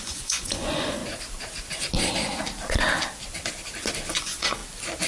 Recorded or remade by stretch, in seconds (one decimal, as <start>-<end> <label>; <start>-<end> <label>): 0.0-1.0 remade; 1.0-4.1 recorded; 4.1-4.6 remade; 4.6-5.1 recorded